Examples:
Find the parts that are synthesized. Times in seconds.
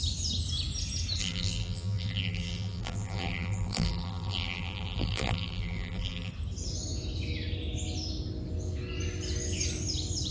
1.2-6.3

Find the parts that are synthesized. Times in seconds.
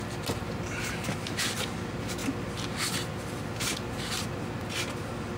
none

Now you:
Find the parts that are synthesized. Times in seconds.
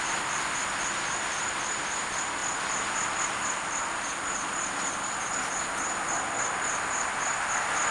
none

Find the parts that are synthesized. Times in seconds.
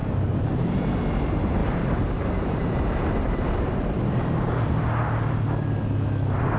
0.0-1.0; 1.6-4.4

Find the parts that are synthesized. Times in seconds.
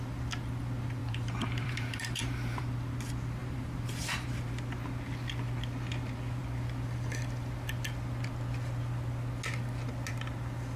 1.0-2.6; 3.4-4.3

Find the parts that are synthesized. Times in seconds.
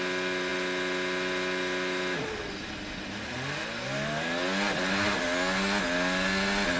none